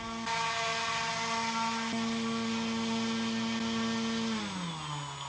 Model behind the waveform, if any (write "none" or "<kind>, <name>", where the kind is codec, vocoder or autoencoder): none